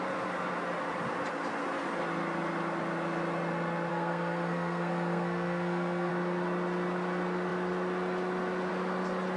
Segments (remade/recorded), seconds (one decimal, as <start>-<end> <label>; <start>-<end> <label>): 0.0-3.9 recorded; 3.9-6.1 remade; 6.1-9.4 recorded